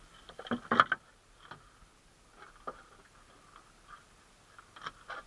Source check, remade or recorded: recorded